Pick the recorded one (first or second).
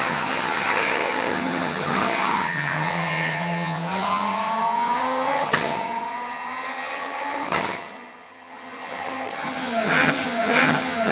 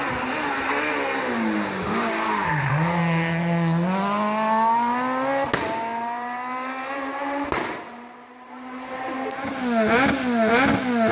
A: second